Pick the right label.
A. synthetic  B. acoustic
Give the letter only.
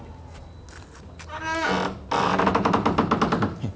B